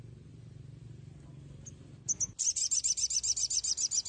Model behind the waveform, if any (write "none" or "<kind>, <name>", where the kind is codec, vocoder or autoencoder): none